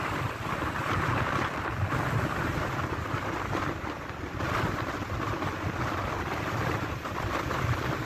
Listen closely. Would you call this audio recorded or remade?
recorded